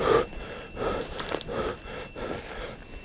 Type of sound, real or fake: real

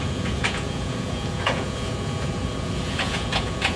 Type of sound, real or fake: fake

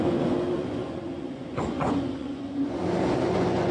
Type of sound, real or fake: fake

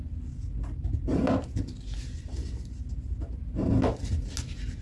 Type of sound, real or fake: real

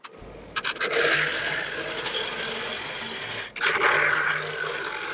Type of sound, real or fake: real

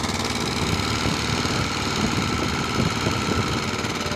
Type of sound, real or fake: real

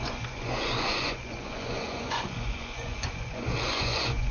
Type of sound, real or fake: fake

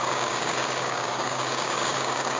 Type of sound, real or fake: fake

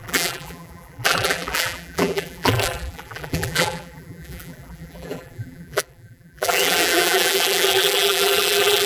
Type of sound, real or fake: fake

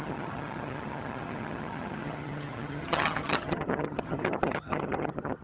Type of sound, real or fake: fake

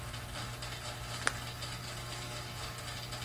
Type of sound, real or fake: real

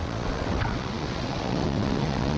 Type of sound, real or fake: fake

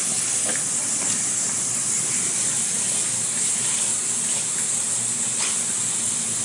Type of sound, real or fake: fake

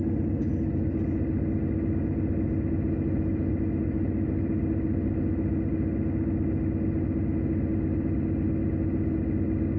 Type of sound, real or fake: real